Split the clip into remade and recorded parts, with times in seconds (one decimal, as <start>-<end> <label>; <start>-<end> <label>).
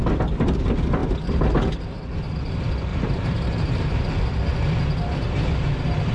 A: 0.0-2.9 recorded; 2.9-4.0 remade; 4.0-6.1 recorded